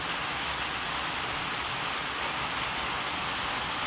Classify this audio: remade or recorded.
recorded